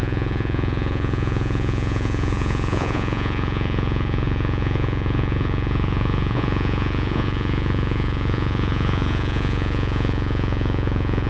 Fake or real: fake